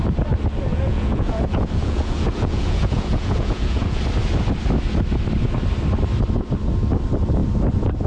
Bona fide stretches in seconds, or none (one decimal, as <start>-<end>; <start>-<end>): 0.0-0.7; 4.0-8.1